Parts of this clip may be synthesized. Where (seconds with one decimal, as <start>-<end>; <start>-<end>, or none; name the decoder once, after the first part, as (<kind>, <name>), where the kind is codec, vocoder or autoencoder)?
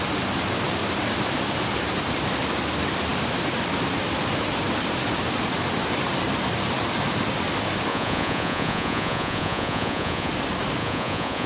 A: 7.9-10.3 (vocoder, Vocos); 10.8-11.5